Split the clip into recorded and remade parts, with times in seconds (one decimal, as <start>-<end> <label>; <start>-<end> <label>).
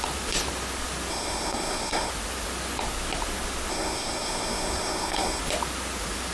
0.0-1.1 recorded; 1.1-2.1 remade; 2.1-3.7 recorded; 3.7-5.4 remade; 5.4-6.3 recorded